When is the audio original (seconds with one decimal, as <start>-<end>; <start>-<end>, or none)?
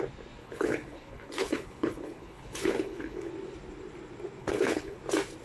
0.0-0.4; 3.3-4.4; 5.0-5.4